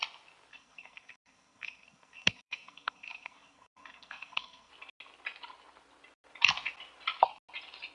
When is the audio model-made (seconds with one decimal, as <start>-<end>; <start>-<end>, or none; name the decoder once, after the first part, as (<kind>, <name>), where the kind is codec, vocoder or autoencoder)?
0.5-4.7 (codec, SNAC)